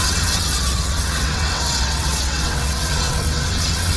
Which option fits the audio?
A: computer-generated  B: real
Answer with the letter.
A